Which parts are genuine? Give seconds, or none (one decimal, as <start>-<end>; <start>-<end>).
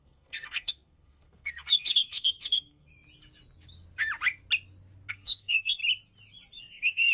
2.9-5.1; 5.8-6.6